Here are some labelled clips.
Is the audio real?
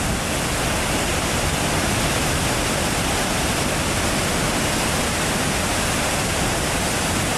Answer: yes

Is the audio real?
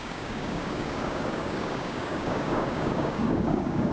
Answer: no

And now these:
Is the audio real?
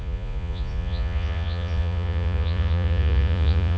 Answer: no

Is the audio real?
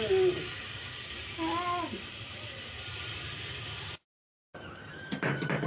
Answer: yes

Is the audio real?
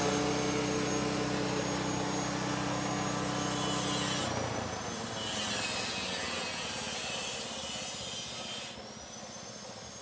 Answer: yes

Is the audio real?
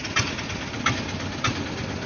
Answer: yes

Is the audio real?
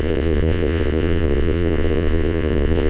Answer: no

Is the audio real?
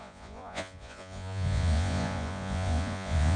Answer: no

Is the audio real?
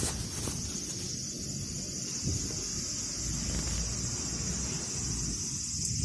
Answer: yes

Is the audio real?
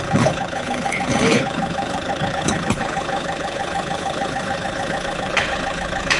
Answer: no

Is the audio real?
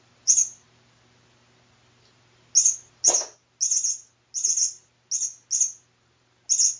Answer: yes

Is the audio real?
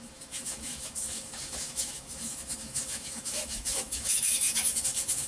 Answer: no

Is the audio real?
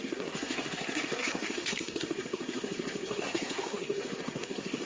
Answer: no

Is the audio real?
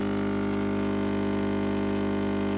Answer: yes